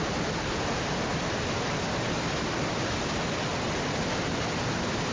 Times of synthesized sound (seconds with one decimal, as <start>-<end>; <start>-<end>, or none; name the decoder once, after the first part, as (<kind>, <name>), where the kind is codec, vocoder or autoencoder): none